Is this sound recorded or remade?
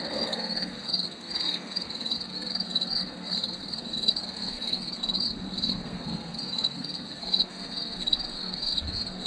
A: remade